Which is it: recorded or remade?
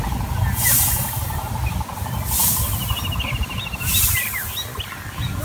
recorded